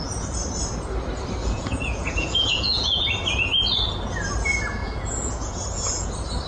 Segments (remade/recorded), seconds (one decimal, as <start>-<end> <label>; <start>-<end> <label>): 0.0-1.4 recorded; 1.4-3.1 remade; 3.1-4.8 recorded; 4.8-6.1 remade; 6.1-6.5 recorded

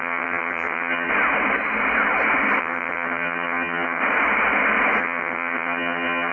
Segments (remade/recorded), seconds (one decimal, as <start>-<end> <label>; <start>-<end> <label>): 0.0-1.1 remade; 1.1-2.6 recorded; 2.6-4.0 remade; 4.0-5.0 recorded; 5.0-6.3 remade

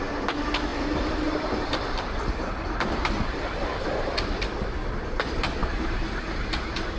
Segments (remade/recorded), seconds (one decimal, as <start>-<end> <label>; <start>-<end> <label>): 0.0-0.7 recorded; 0.7-4.5 remade; 4.5-7.0 recorded

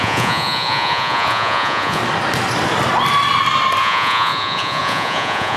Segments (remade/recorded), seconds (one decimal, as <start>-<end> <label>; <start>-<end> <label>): 0.0-2.0 remade; 2.0-3.8 recorded; 3.8-5.6 remade

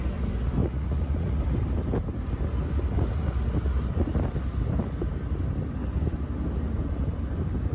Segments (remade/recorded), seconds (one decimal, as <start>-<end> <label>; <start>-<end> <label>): 0.0-0.6 recorded; 0.6-1.4 remade; 1.4-7.7 recorded

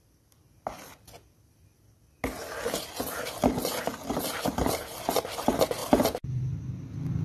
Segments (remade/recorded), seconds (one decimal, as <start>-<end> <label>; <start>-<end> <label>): 0.0-7.2 recorded